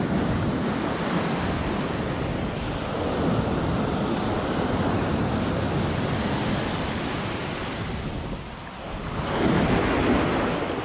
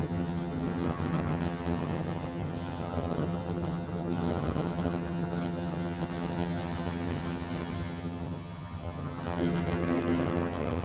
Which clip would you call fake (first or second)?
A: second